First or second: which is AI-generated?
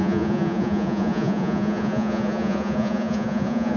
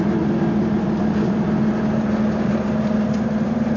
first